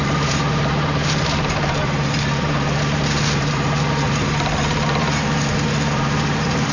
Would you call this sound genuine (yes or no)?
no